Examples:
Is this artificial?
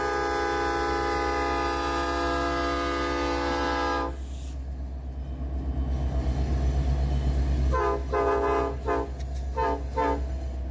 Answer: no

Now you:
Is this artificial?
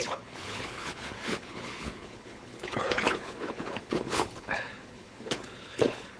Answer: yes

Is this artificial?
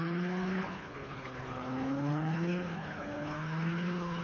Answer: yes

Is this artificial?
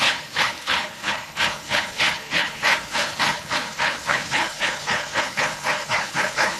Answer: yes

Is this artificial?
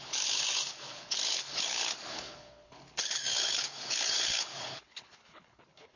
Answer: yes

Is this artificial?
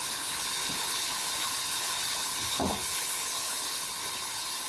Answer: yes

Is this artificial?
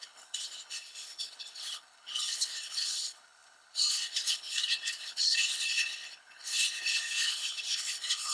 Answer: yes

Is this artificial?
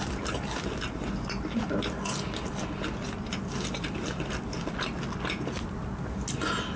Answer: no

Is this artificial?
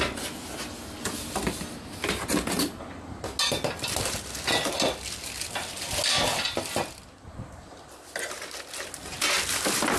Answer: no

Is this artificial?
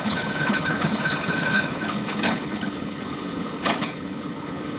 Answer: yes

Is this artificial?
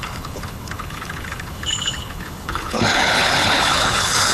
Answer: yes